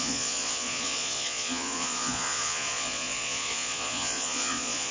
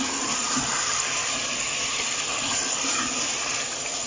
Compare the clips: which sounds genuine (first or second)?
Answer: second